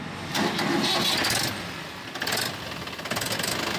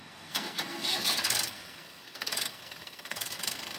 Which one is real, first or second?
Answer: first